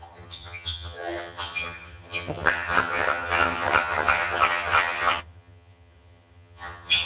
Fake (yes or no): yes